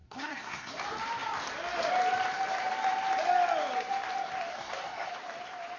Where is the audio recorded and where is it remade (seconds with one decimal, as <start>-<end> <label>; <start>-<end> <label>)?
0.0-0.7 remade; 0.7-4.5 recorded; 4.5-5.1 remade; 5.1-5.8 recorded